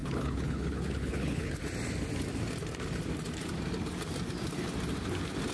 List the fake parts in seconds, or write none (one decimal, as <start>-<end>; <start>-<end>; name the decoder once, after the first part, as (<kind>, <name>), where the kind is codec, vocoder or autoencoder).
0.0-1.6 (codec, HILCodec)